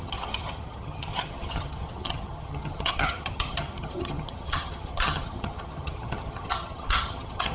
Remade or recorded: remade